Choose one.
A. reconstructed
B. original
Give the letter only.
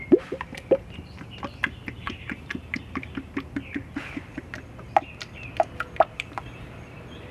A